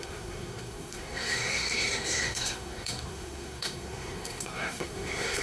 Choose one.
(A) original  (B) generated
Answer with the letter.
B